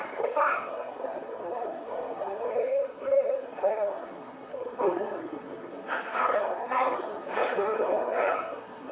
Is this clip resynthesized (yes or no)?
yes